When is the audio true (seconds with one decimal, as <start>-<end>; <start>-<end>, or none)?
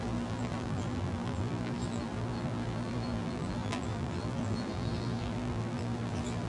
none